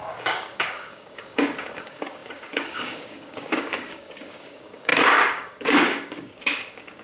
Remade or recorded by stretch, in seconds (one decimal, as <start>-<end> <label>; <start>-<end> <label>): 0.0-7.0 remade